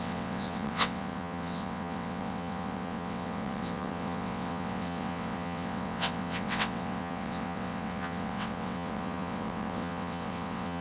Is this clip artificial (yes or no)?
yes